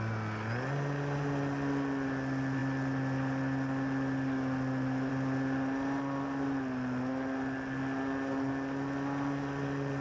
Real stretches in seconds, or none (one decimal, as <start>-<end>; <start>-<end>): 0.0-10.0